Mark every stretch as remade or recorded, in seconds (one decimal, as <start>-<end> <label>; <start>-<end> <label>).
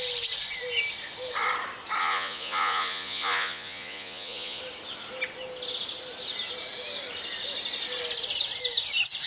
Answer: 0.0-2.0 recorded; 2.0-4.6 remade; 4.6-9.3 recorded